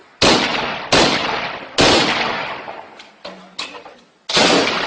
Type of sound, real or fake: real